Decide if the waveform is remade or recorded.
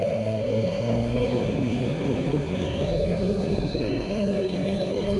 remade